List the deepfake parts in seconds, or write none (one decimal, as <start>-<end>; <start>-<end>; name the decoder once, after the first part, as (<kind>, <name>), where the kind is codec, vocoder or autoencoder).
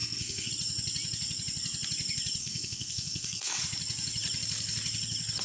0.0-0.5 (codec, SNAC); 2.4-3.6